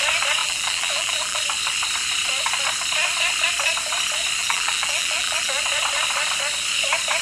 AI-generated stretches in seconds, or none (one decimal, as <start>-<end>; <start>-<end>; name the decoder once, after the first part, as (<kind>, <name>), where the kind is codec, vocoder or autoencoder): 0.4-1.4 (vocoder, BigVGAN v2); 4.4-5.6